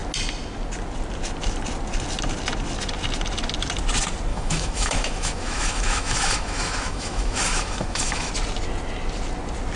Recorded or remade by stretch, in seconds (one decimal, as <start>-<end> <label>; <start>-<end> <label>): 0.0-4.3 recorded; 4.3-8.3 remade; 8.3-9.8 recorded